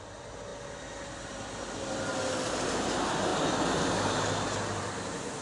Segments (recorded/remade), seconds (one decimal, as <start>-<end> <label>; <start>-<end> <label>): 0.0-5.4 recorded